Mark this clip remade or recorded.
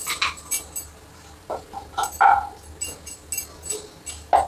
recorded